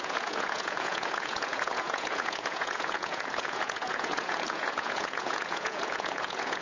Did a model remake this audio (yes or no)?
yes